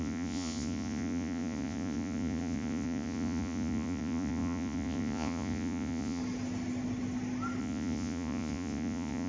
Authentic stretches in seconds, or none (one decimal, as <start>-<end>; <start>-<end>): 6.2-7.6